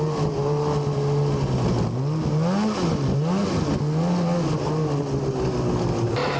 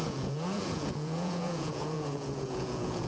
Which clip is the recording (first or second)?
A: first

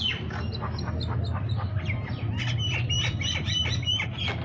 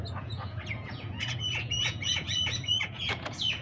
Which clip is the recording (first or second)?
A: first